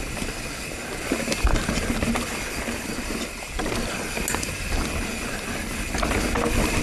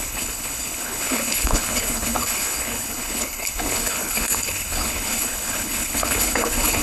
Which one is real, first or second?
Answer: first